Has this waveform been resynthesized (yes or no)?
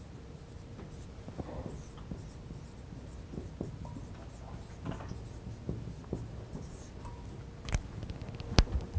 no